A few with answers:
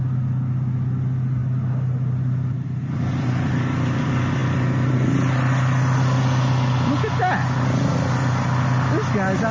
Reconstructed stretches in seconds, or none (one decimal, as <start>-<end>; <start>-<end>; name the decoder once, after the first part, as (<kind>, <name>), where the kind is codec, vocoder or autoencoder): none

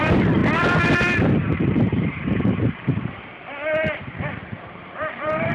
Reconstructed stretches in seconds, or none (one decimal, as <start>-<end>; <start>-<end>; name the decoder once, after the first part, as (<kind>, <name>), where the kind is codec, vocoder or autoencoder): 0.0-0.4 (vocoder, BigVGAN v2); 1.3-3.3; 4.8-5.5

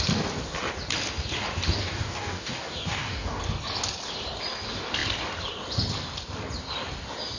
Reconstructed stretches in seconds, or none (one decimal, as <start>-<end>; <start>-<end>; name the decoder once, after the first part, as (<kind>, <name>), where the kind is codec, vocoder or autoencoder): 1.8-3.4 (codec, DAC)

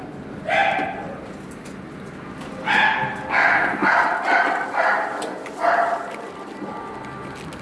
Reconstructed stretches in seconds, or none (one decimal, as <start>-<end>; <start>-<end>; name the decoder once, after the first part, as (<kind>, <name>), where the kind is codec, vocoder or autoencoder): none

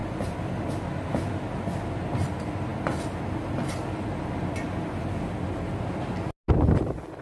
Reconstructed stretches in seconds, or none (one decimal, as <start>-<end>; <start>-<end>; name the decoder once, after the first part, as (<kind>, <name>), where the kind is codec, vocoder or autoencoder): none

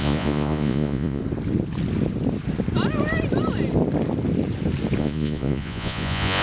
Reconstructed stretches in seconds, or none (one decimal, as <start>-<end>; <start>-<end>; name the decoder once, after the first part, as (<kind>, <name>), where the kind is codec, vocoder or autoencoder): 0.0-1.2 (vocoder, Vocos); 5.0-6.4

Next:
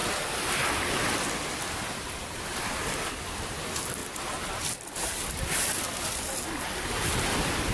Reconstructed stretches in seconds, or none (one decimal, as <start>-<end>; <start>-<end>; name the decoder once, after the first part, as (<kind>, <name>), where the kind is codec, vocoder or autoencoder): none

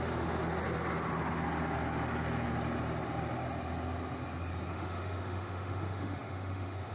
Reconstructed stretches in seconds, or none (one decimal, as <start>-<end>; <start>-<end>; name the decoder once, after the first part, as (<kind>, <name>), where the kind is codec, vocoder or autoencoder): 0.0-0.6 (autoencoder, DAC-VAE); 4.7-6.9